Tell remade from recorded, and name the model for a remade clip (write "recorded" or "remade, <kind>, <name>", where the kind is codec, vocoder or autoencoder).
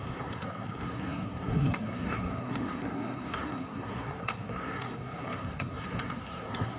remade, codec, SNAC